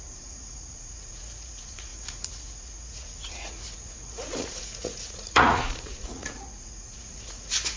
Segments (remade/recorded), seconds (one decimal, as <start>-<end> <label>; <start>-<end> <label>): 0.0-7.8 remade